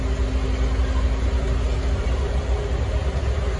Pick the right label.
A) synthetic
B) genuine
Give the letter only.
B